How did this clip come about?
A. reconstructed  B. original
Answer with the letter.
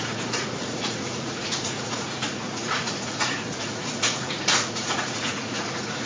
A